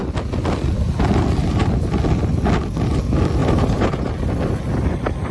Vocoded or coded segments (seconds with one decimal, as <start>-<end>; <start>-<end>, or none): 3.4-4.3